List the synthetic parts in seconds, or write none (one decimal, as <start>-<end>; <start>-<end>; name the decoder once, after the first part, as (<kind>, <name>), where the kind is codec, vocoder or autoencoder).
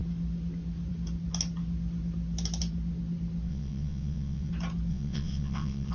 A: 3.5-4.5 (vocoder, WaveNeXt); 4.9-5.9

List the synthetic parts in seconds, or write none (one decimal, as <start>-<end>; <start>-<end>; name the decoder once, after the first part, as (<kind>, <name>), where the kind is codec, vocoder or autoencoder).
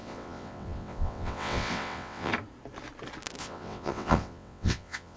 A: 0.0-2.3 (vocoder, WaveNeXt); 3.4-5.2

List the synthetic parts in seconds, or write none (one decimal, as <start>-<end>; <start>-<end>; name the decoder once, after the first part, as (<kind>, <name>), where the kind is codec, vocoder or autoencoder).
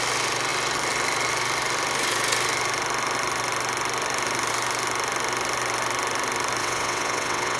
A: 6.6-7.6 (vocoder, WaveNeXt)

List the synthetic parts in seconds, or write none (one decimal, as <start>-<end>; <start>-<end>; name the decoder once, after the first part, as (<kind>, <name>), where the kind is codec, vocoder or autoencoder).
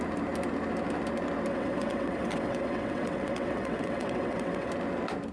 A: 1.5-4.7 (vocoder, WaveNeXt)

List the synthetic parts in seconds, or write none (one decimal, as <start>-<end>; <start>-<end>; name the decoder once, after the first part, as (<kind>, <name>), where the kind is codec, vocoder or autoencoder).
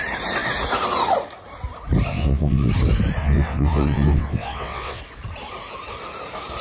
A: 2.1-2.7 (vocoder, WaveNeXt); 3.2-5.0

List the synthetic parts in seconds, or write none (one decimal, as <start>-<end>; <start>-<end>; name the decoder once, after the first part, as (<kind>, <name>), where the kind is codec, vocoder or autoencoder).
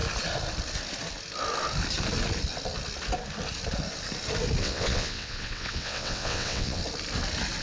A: 4.6-6.8 (vocoder, WaveNeXt)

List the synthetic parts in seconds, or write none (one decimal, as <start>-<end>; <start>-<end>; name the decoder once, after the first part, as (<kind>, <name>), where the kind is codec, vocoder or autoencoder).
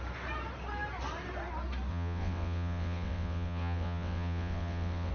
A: 1.9-5.1 (vocoder, WaveNeXt)